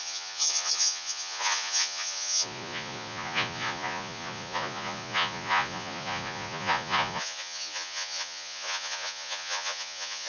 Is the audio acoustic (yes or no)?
no